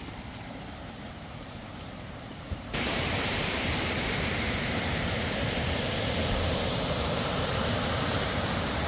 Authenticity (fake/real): fake